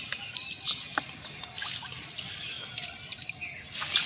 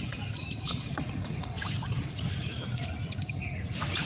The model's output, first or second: second